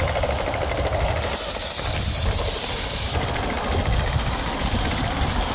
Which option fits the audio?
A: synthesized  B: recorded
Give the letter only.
B